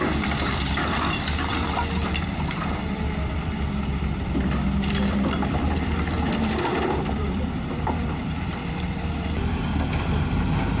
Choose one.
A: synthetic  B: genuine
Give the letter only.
A